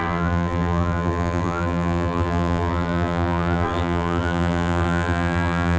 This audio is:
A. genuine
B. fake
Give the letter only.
B